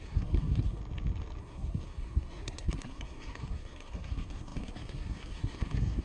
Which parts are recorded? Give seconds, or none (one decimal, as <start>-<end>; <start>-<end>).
0.8-1.4